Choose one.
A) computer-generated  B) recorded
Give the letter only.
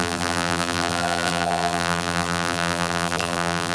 A